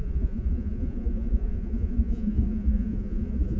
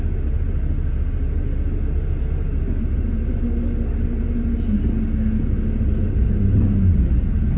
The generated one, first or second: first